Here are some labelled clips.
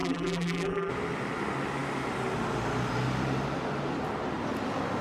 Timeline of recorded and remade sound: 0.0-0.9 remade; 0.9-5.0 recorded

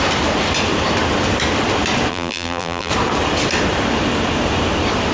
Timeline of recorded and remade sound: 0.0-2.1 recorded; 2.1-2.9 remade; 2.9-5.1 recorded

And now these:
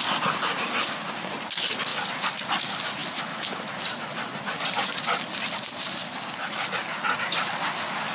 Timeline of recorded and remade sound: 0.0-8.1 recorded

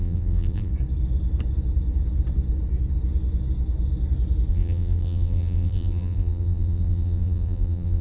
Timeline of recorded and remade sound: 0.0-0.7 remade; 0.7-4.5 recorded; 4.5-8.0 remade

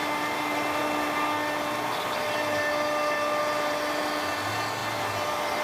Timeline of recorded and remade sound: 0.0-5.6 recorded